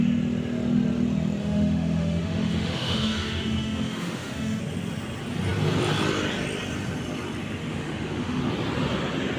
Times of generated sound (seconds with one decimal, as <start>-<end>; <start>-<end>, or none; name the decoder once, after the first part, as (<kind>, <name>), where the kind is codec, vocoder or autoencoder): 1.4-4.6 (autoencoder, DAC-VAE); 7.7-8.4